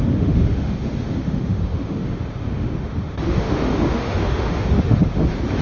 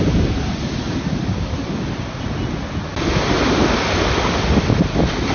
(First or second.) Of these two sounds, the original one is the second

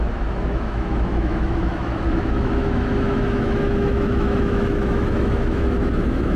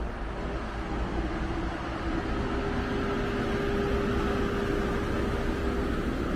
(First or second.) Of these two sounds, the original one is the second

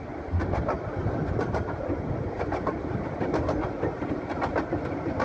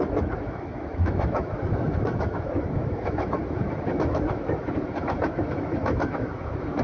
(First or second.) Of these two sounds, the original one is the first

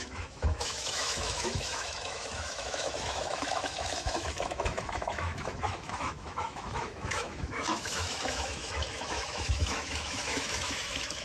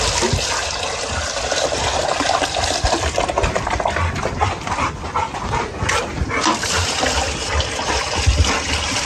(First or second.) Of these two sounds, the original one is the second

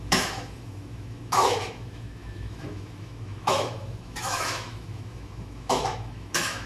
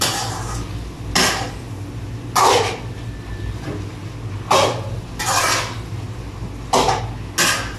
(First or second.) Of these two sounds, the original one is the second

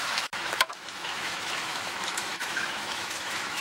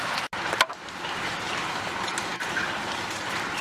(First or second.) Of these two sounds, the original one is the second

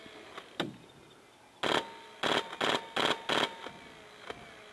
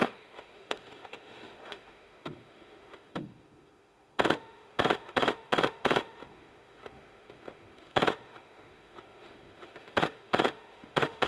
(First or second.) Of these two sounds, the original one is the first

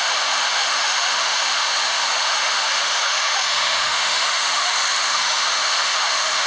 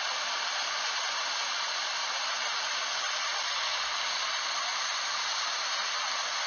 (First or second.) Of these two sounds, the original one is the second